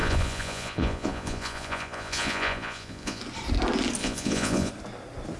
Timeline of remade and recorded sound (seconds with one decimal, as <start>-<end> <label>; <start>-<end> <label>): 0.0-3.2 remade; 3.2-4.0 recorded; 4.0-4.7 remade; 4.7-5.4 recorded

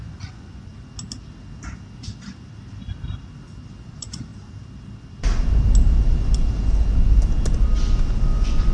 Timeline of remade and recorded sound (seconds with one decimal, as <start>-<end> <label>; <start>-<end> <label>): 0.0-0.7 remade; 0.7-3.9 recorded; 3.9-4.3 remade; 4.3-8.2 recorded; 8.2-8.7 remade

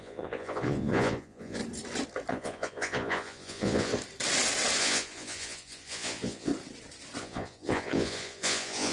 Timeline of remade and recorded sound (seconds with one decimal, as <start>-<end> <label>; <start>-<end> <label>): 0.0-1.6 remade; 1.6-2.3 recorded; 2.3-3.9 remade; 3.9-4.8 recorded; 4.8-6.5 remade; 6.5-7.2 recorded; 7.2-8.9 remade